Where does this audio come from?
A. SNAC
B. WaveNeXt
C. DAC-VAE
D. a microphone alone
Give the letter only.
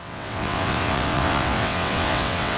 B